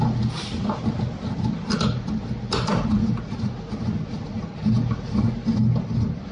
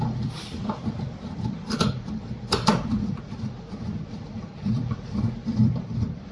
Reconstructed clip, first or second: second